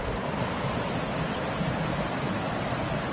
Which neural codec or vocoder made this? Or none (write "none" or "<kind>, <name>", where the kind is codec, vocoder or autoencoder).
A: vocoder, BigVGAN v2